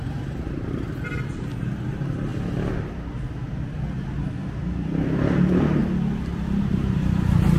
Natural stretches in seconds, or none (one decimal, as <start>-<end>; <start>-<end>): 2.3-4.2; 5.8-6.6